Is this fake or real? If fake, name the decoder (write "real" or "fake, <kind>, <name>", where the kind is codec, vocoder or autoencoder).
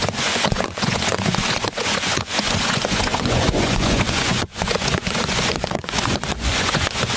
fake, vocoder, Vocos